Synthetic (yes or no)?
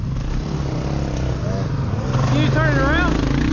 no